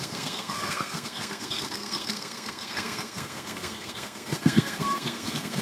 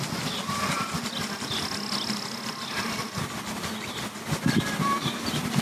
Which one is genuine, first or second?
second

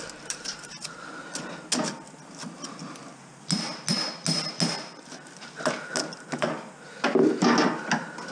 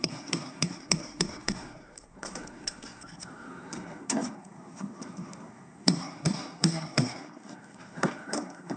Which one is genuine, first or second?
first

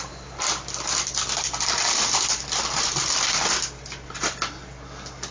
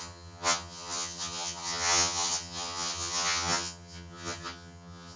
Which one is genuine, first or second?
first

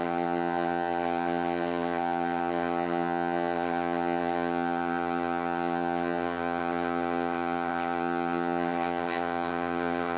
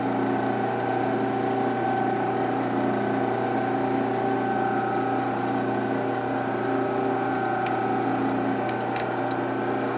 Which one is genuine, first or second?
second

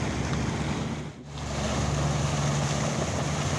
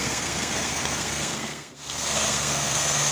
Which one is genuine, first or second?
first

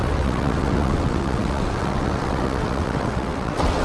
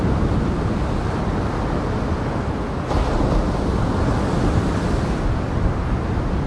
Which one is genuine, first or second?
second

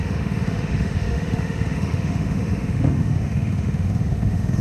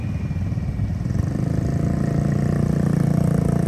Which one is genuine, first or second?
second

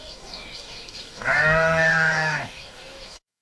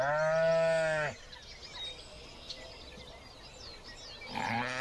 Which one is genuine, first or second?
second